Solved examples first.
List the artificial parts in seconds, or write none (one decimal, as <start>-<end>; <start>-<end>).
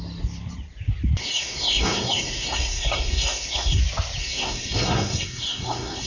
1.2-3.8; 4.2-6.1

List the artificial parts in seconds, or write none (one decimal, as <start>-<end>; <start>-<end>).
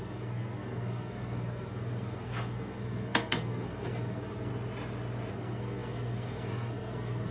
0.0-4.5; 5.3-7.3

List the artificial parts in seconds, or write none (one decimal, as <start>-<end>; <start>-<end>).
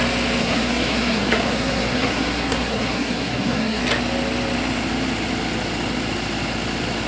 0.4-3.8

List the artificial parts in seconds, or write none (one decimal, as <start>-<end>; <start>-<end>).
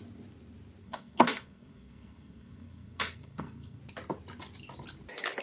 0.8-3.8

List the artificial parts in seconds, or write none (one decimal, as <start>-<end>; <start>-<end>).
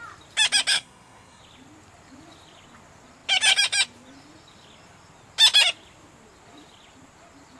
0.7-1.4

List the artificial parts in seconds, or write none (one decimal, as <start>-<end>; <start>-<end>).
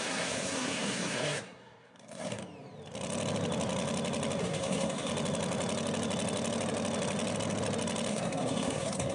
0.0-2.4; 4.4-5.1; 8.1-9.1